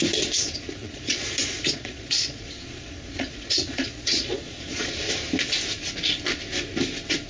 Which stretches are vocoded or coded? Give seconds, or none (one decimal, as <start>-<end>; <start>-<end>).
0.8-4.9